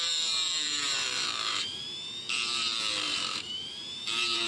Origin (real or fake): fake